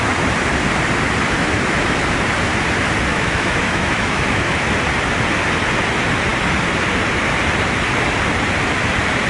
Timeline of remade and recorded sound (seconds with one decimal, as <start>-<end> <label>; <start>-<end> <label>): 0.0-3.1 recorded; 3.1-4.7 remade; 4.7-9.3 recorded

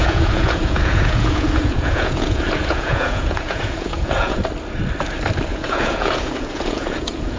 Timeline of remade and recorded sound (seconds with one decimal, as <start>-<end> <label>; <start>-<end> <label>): 0.0-4.4 remade; 4.4-5.5 recorded; 5.5-7.4 remade

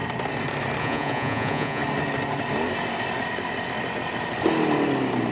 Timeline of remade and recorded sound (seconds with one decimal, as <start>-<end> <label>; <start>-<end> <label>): 0.0-0.8 recorded; 0.8-1.8 remade; 1.8-5.3 recorded

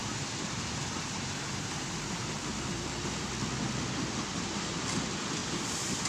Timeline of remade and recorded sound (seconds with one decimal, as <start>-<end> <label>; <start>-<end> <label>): 0.0-3.3 remade; 3.3-6.1 recorded

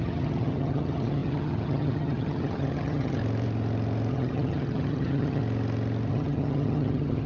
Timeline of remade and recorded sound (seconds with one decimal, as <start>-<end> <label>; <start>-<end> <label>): 0.0-3.2 remade; 3.2-4.1 recorded; 4.1-5.4 remade; 5.4-6.1 recorded; 6.1-7.3 remade

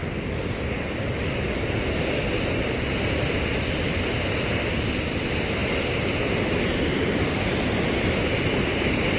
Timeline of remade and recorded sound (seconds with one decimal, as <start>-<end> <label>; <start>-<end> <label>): 0.0-9.2 recorded

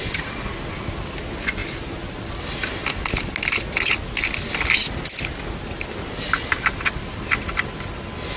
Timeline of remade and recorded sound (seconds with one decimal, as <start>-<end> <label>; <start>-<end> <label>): 0.0-8.4 recorded